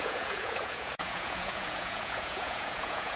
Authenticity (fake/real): fake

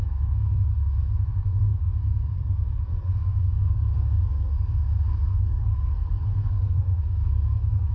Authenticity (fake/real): fake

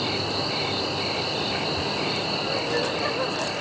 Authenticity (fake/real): real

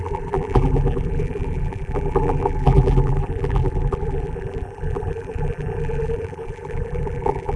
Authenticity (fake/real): fake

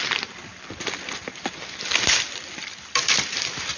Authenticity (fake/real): fake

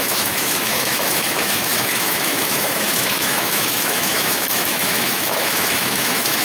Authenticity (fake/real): fake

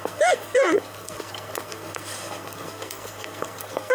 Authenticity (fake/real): fake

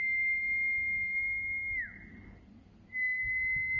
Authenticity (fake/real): real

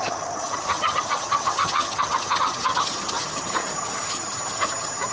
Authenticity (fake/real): fake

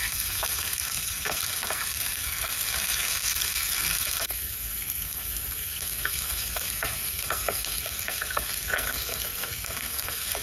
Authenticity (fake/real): fake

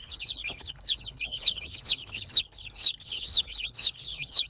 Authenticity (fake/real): fake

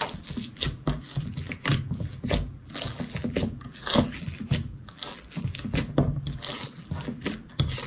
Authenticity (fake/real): fake